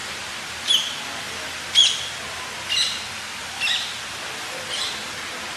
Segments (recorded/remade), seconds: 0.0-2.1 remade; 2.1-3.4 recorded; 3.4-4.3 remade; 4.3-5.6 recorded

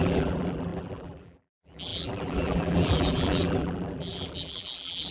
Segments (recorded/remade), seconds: 0.0-5.1 remade

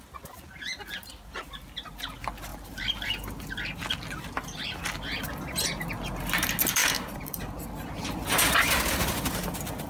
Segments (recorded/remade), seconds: 0.0-2.5 recorded; 2.5-3.4 remade; 3.4-6.8 recorded; 6.8-7.4 remade; 7.4-9.9 recorded

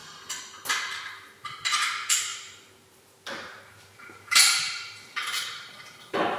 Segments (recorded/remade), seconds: 0.0-1.1 recorded; 1.1-6.4 remade

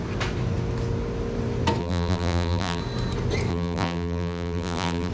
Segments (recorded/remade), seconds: 0.0-1.8 recorded; 1.8-2.8 remade; 2.8-3.5 recorded; 3.5-5.1 remade

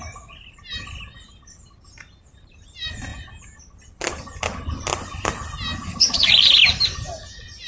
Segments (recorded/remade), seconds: 0.0-3.1 remade; 3.1-7.3 recorded; 7.3-7.7 remade